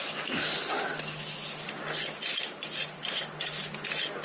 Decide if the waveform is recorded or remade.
recorded